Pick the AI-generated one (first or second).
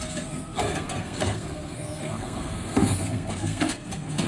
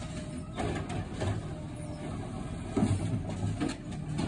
first